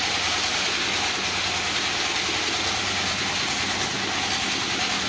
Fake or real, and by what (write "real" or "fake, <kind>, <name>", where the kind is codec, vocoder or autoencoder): real